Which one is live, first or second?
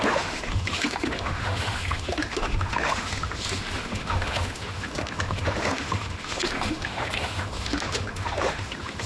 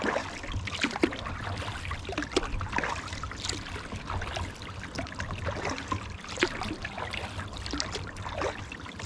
second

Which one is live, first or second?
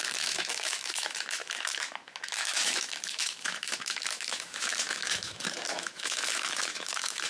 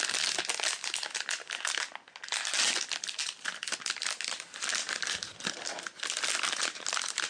second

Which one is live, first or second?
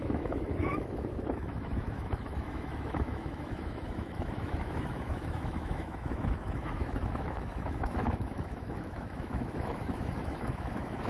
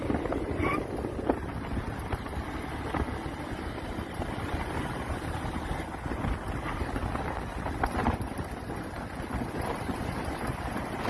second